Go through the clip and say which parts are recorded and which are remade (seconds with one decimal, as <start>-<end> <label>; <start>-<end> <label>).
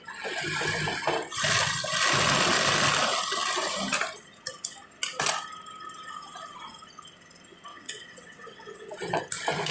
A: 0.0-7.7 recorded; 7.7-9.2 remade; 9.2-9.7 recorded